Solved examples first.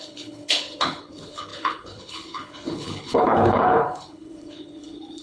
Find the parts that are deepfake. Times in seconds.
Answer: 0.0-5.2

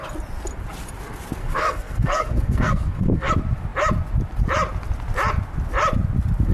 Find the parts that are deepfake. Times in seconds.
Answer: 1.4-3.3